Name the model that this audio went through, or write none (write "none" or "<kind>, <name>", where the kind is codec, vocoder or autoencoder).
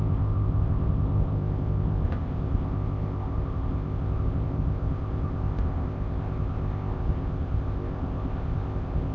codec, ZipCodec